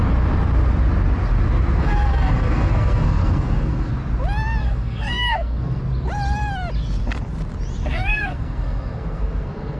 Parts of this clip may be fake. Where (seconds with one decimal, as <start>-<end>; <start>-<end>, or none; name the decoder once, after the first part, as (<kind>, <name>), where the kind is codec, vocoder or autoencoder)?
1.8-3.9 (codec, SNAC); 4.6-5.8; 7.8-9.8